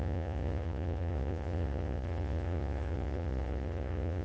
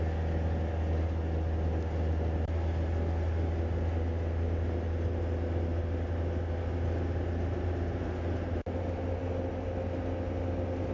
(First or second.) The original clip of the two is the second